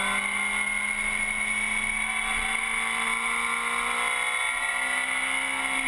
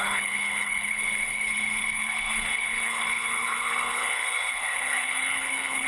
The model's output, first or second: second